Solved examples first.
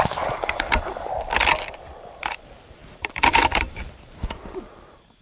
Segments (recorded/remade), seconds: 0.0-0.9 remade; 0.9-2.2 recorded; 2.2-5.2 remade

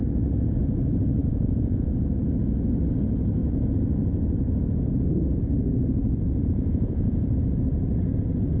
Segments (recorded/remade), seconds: 0.0-1.2 recorded; 1.2-1.9 remade; 1.9-6.4 recorded; 6.4-7.3 remade; 7.3-8.6 recorded

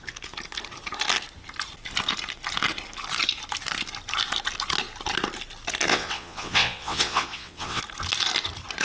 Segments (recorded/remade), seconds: 0.0-5.9 recorded; 5.9-7.8 remade; 7.8-8.8 recorded

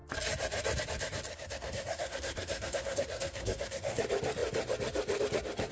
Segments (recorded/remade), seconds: 0.0-1.3 recorded; 1.3-4.0 remade; 4.0-5.7 recorded

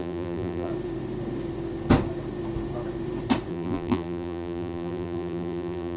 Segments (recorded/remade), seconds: 0.0-0.7 remade; 0.7-3.5 recorded; 3.5-6.0 remade

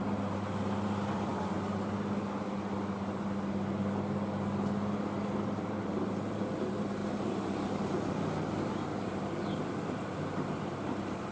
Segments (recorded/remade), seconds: 0.0-1.3 remade; 1.3-5.4 recorded; 5.4-11.3 remade

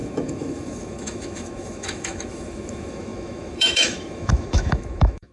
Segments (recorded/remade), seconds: 0.0-5.3 remade